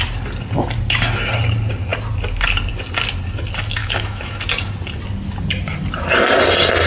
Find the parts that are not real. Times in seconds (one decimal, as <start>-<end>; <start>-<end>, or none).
3.8-4.4